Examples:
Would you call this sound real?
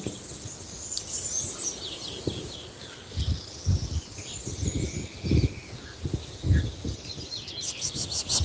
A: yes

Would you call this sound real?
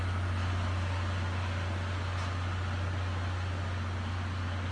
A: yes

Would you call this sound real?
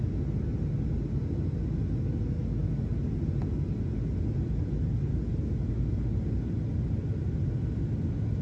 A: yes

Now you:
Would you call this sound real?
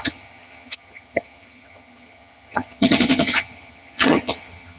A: no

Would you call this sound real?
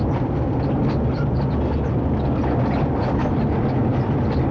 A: yes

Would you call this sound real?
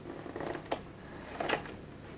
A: yes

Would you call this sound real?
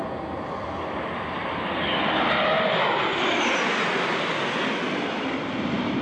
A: yes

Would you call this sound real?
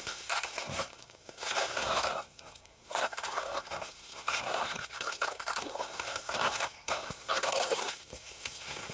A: no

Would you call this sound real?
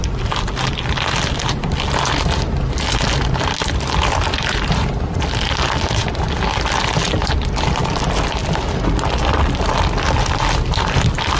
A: yes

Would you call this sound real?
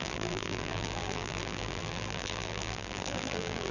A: no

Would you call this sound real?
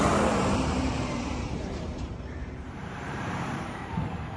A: no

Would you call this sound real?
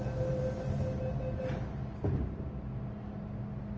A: yes